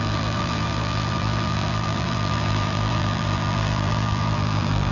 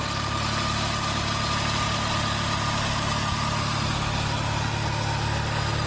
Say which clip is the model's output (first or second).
first